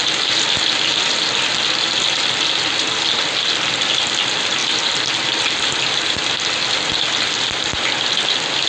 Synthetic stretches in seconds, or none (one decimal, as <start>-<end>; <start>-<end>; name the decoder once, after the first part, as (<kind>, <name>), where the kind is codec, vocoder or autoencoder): 4.6-5.4 (vocoder, BigVGAN v2)